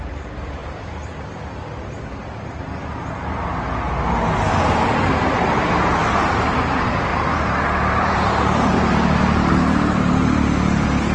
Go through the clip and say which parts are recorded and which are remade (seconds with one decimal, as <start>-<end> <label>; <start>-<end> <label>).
0.0-2.2 remade; 2.2-6.5 recorded; 6.5-11.1 remade